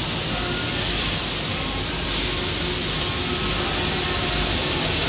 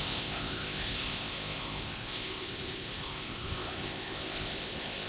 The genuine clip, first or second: first